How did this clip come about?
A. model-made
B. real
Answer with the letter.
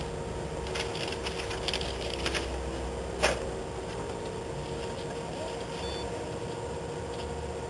B